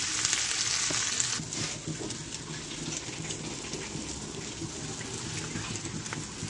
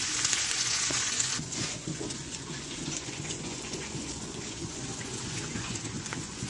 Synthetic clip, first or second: second